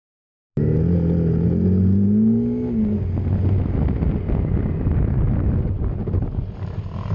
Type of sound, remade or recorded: recorded